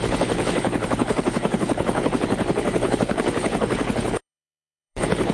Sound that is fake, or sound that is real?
fake